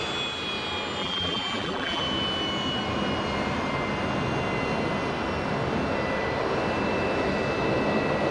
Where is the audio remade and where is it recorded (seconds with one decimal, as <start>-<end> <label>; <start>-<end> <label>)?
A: 0.0-1.0 recorded; 1.0-2.0 remade; 2.0-8.3 recorded